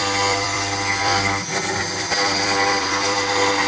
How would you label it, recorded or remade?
remade